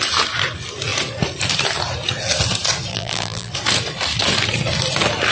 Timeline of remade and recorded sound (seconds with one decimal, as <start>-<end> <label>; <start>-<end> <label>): 0.0-2.9 recorded; 2.9-3.5 remade; 3.5-5.3 recorded